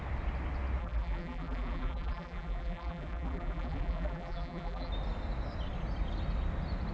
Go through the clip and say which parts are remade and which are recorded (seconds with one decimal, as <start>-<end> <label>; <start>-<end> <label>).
0.0-0.8 recorded; 0.8-4.9 remade; 4.9-6.9 recorded